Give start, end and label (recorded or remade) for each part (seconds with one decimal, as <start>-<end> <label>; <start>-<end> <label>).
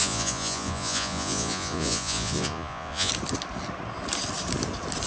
0.0-3.1 remade; 3.1-5.1 recorded